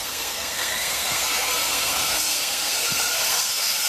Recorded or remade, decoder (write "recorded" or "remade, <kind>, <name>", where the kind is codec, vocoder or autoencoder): remade, codec, SNAC